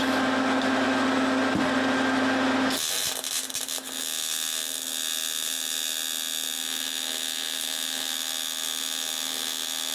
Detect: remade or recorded recorded